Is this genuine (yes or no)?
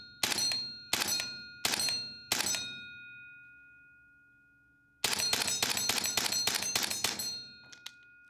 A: yes